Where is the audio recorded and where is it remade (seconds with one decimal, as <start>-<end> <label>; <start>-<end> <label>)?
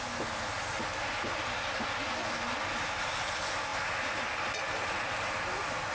0.0-5.9 recorded